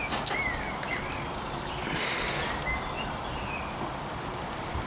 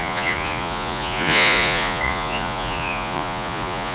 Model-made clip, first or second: second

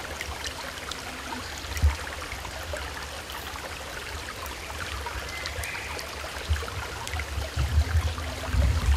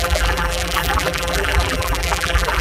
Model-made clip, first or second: second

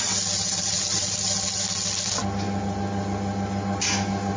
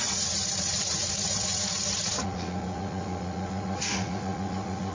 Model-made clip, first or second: second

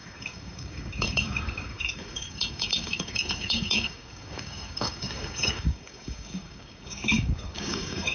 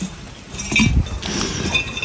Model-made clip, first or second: first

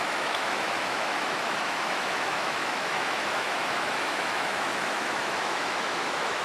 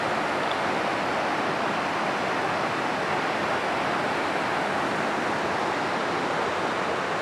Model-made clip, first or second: first